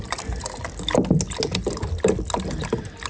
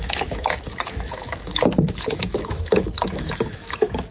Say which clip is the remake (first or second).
second